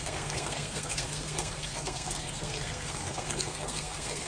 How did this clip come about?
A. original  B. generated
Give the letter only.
B